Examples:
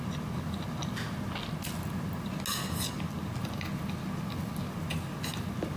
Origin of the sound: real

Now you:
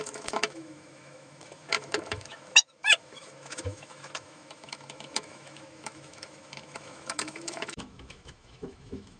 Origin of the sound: fake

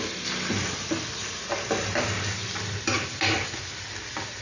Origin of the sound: real